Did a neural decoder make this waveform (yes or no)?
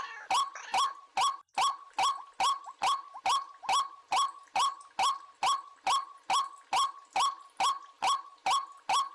no